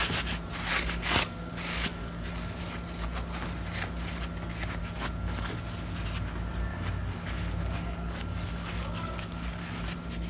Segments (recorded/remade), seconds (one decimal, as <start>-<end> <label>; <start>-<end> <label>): 0.0-0.7 recorded; 0.7-2.6 remade; 2.6-4.8 recorded; 4.8-5.5 remade; 5.5-6.7 recorded; 6.7-9.8 remade; 9.8-10.3 recorded